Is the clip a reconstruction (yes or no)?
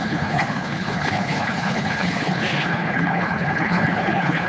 yes